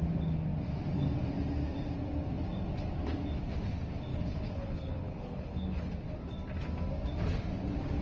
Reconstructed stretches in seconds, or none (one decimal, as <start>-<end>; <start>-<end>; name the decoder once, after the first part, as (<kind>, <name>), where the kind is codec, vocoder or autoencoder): 4.1-5.9 (codec, HILCodec)